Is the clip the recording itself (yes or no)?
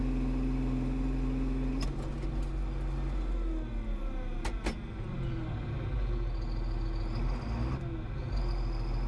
yes